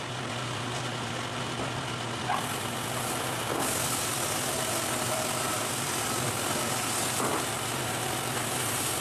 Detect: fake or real fake